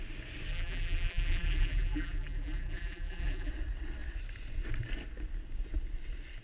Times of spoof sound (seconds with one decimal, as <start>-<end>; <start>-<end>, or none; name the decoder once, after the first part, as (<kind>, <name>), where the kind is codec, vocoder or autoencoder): 0.5-3.5 (vocoder, BigVGAN v2)